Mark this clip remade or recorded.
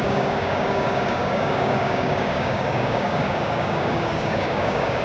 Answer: remade